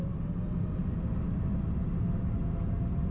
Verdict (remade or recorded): recorded